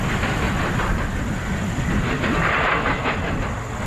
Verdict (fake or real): real